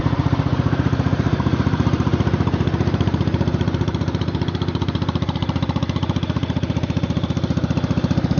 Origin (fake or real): fake